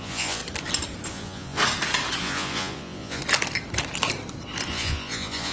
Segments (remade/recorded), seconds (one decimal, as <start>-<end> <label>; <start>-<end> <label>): 0.0-0.4 remade; 0.4-1.1 recorded; 1.1-1.6 remade; 1.6-2.2 recorded; 2.2-3.2 remade; 3.2-4.7 recorded; 4.7-5.5 remade